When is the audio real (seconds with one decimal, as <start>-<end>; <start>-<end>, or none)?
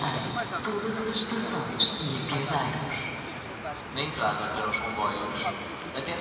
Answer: 0.0-6.2